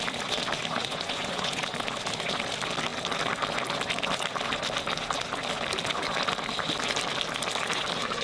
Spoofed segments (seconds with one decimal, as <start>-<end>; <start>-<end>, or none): 0.8-1.6